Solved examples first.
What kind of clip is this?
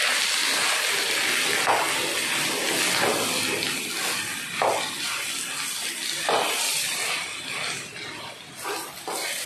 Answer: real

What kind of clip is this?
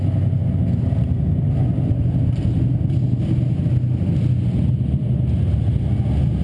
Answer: real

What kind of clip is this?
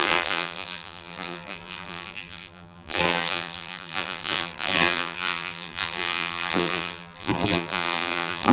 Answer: fake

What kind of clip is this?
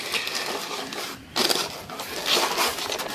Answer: real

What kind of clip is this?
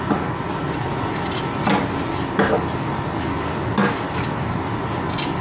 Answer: real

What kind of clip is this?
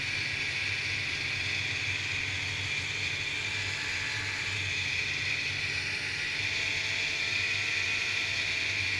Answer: real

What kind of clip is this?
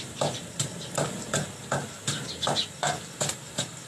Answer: fake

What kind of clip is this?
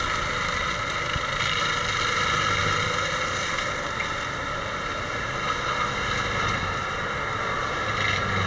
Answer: real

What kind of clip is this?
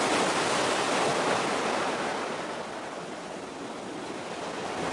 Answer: real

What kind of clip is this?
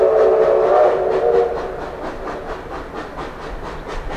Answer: real